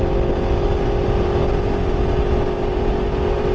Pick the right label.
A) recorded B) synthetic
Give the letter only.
A